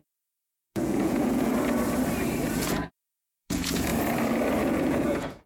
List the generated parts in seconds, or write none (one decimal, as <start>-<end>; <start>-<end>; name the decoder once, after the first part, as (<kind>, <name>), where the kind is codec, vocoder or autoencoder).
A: 0.0-1.5 (vocoder, Vocos); 2.5-3.9; 4.6-5.5